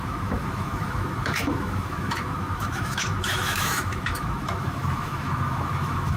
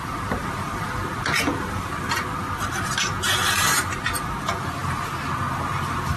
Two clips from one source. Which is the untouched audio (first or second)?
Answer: second